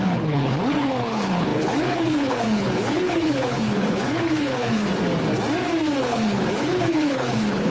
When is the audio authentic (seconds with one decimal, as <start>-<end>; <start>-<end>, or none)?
4.9-6.0